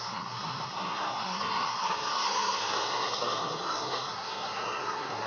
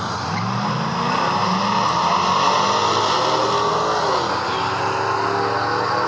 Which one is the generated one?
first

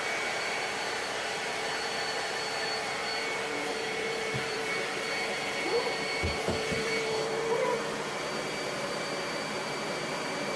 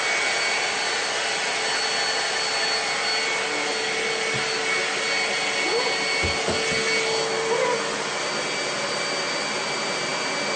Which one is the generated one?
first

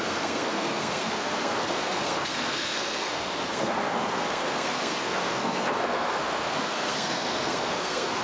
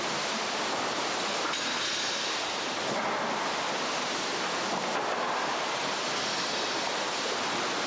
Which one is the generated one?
first